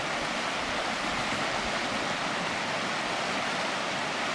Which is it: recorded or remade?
recorded